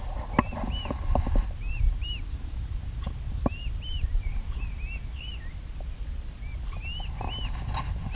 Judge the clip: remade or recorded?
recorded